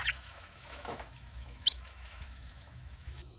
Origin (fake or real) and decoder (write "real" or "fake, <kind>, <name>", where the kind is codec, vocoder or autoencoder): fake, autoencoder, DAC-VAE